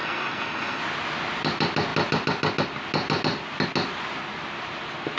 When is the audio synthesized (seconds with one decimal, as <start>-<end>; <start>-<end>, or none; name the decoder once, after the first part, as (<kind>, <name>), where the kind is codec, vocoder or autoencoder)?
0.0-0.8 (codec, SNAC)